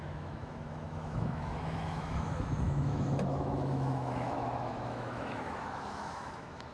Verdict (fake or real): fake